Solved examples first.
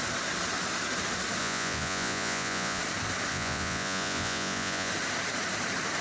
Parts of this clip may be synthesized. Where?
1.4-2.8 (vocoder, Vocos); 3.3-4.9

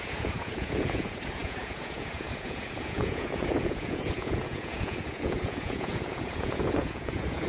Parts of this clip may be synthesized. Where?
0.0-7.5 (vocoder, Vocos)